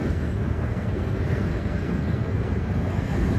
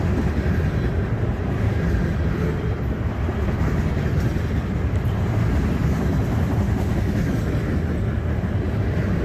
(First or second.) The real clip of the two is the second